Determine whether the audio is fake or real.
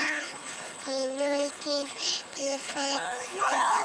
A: fake